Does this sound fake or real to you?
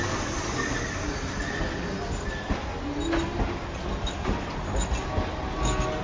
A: real